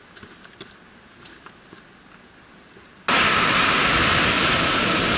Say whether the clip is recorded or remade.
recorded